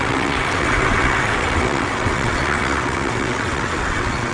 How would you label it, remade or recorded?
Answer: remade